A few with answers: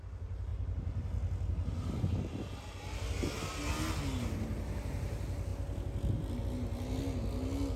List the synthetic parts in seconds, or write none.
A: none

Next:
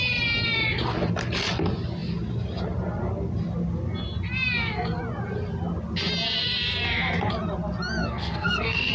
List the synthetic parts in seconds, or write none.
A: 8.0-8.9 (codec, SNAC)

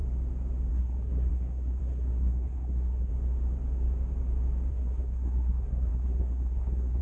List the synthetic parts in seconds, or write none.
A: 0.7-3.1 (codec, SNAC); 4.7-7.0

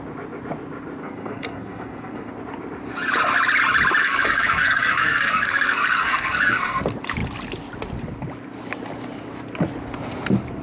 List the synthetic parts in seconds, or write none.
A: 1.0-2.3 (codec, SNAC); 4.0-6.8

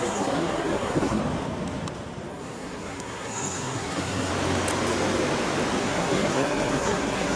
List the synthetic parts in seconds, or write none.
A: 0.0-1.2 (codec, SNAC); 2.3-4.3; 5.8-7.4

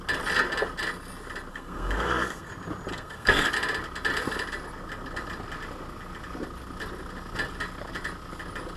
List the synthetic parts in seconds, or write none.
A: 1.5-2.5 (codec, SNAC); 2.9-3.5

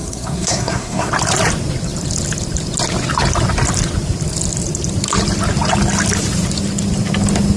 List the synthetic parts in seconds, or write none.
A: 0.0-1.1 (codec, SNAC)

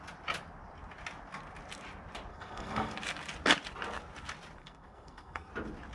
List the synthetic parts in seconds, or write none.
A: 2.3-2.9 (codec, SNAC); 4.6-5.5